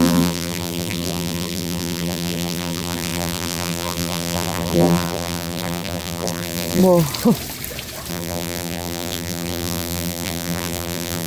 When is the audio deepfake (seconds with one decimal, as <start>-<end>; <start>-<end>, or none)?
0.0-6.8; 8.1-11.3